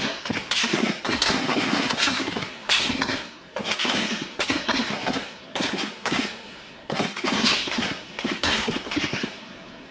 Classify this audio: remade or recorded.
remade